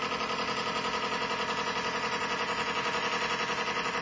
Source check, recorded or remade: recorded